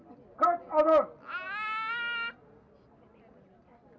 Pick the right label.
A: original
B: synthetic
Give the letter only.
A